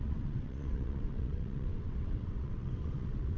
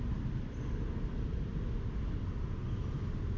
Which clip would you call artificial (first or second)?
first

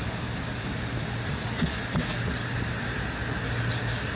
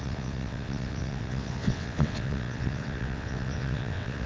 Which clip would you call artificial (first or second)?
second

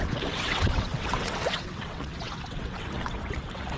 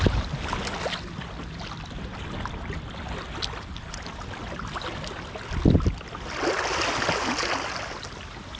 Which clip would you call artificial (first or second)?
first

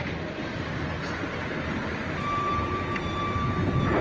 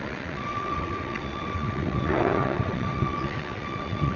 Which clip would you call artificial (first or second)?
second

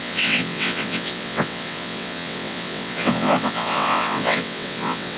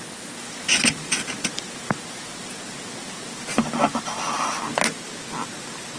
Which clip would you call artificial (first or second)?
first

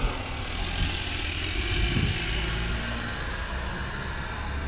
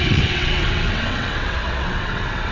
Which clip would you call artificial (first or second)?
second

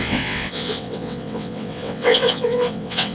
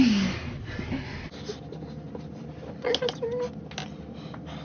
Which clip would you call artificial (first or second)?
first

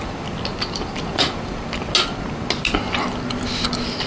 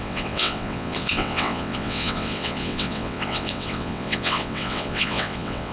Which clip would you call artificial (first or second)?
second